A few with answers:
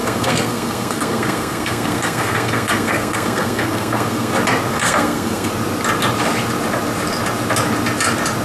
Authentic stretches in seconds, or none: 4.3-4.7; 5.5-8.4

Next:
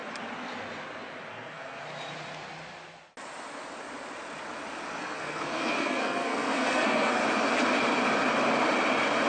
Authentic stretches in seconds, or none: 0.0-1.3; 1.8-5.0; 7.2-9.3

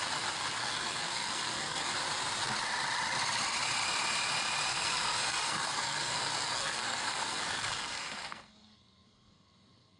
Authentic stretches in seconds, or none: 0.0-0.6; 1.9-4.7

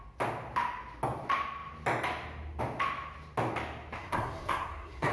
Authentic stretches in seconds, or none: 0.0-4.0

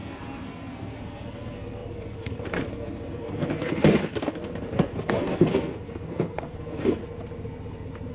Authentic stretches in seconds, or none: 7.0-8.1